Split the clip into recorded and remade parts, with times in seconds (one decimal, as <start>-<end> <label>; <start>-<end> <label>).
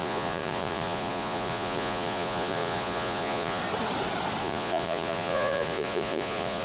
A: 0.0-3.6 remade; 3.6-4.4 recorded; 4.4-6.6 remade